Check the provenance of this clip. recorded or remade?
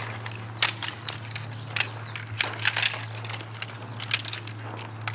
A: recorded